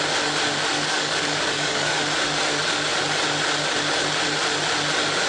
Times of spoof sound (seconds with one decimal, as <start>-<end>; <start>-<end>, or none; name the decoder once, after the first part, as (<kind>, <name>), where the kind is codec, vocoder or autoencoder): 0.7-2.0 (codec, DAC)